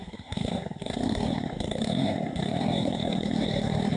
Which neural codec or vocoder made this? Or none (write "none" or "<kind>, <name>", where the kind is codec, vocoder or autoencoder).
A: codec, SNAC